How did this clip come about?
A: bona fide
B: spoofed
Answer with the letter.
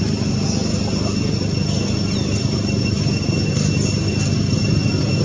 A